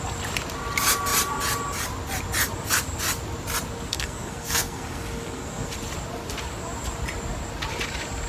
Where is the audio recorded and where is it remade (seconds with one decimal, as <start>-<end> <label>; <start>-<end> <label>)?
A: 0.0-3.9 recorded; 3.9-5.7 remade; 5.7-8.3 recorded